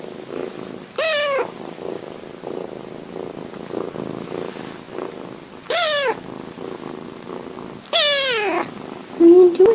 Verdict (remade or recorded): recorded